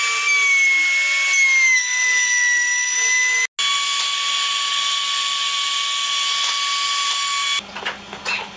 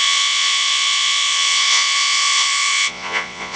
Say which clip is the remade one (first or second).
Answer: second